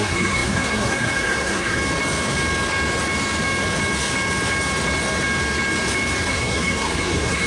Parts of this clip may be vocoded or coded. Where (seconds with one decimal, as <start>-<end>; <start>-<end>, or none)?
0.0-1.8; 6.3-7.5